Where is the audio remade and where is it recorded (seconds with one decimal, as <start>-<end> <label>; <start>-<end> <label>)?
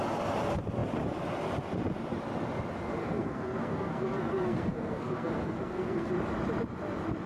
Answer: 0.0-3.0 recorded; 3.0-6.1 remade; 6.1-7.3 recorded